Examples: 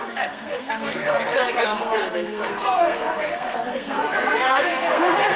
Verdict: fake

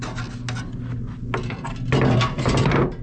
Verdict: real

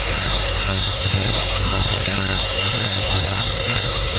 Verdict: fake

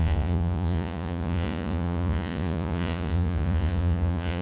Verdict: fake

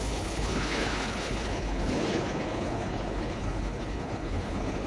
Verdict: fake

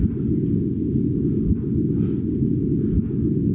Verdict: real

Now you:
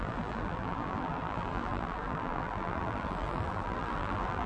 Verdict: fake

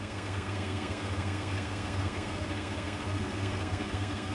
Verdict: fake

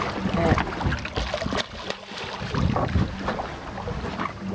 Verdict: real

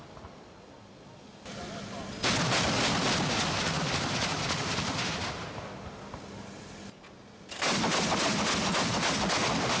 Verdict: real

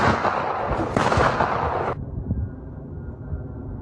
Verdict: real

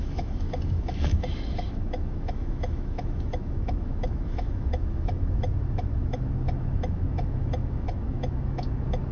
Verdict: fake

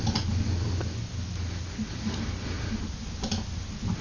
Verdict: real